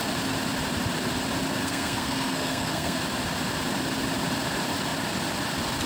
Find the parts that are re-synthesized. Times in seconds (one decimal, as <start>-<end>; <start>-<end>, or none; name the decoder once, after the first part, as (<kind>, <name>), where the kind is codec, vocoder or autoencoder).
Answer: 1.5-3.0 (codec, SNAC)